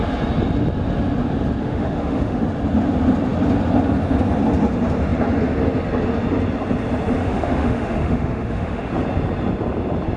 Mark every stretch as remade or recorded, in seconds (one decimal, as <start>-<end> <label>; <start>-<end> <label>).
0.0-1.6 recorded; 1.6-2.4 remade; 2.4-7.2 recorded; 7.2-8.9 remade; 8.9-10.2 recorded